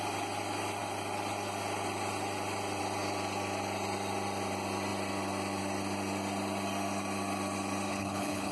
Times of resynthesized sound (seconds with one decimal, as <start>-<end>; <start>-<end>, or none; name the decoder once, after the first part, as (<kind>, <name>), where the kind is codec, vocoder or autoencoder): 7.9-8.5 (codec, HILCodec)